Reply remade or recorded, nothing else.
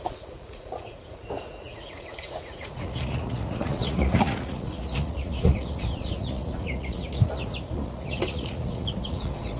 remade